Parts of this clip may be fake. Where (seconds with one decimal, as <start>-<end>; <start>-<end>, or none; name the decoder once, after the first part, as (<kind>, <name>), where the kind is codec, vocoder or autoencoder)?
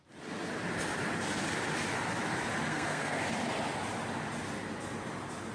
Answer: 2.7-3.2 (codec, SNAC)